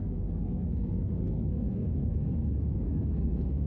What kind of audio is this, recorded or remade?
remade